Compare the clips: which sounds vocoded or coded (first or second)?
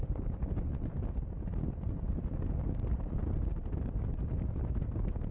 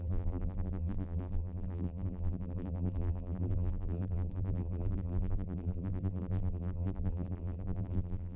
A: second